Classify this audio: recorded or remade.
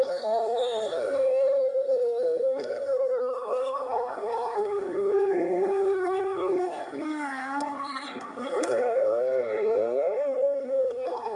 remade